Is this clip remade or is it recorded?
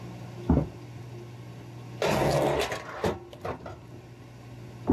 recorded